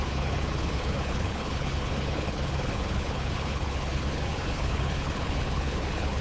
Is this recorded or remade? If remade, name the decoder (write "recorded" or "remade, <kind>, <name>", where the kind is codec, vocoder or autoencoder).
remade, codec, HILCodec